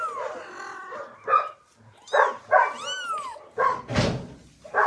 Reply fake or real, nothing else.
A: real